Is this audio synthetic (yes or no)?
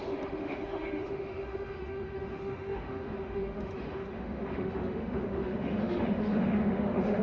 yes